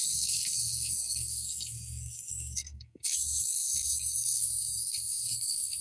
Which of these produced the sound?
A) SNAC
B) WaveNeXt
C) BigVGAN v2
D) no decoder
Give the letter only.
A